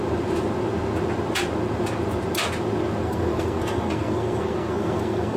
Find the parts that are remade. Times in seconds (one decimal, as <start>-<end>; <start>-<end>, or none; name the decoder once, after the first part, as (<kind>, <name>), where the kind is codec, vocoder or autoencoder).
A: 3.0-5.4 (codec, SNAC)